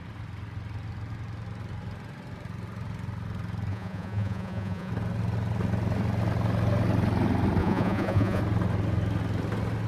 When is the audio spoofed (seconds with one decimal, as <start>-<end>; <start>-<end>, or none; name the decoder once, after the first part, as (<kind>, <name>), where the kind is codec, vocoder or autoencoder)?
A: 3.7-4.9 (vocoder, Vocos); 7.6-8.4

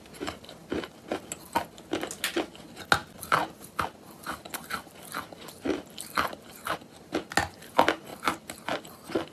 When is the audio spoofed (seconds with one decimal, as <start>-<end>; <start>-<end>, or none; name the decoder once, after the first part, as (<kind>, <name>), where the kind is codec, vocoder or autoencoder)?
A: none

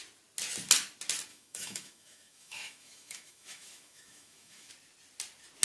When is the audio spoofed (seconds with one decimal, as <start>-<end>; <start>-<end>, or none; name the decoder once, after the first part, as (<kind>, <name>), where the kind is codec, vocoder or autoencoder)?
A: 1.3-4.7 (autoencoder, DAC-VAE)